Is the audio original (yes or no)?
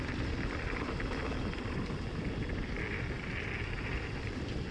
yes